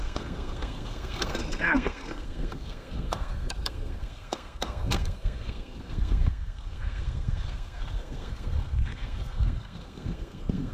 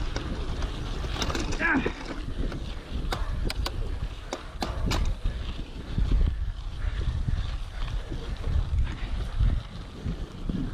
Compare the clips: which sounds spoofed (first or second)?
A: first